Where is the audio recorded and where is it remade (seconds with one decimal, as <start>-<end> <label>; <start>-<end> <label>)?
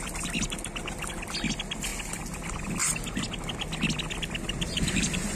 0.0-5.4 recorded